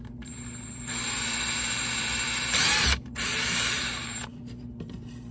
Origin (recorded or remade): remade